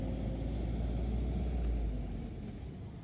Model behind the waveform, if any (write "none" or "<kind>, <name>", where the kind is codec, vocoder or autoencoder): none